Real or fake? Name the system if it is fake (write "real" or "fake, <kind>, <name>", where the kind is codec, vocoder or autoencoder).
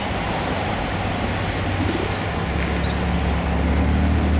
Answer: real